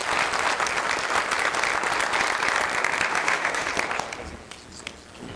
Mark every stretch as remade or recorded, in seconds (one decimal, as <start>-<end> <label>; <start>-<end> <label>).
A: 0.0-3.1 recorded; 3.1-3.7 remade; 3.7-5.4 recorded